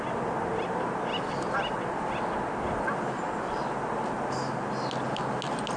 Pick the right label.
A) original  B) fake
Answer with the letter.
A